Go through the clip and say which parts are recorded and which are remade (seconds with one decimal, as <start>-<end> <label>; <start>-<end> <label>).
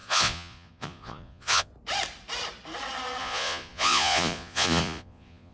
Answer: 0.0-1.7 remade; 1.7-3.2 recorded; 3.2-5.5 remade